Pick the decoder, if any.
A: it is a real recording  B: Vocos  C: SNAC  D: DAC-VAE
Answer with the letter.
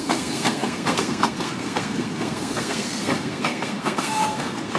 C